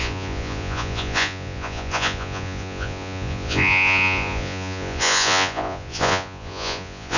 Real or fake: fake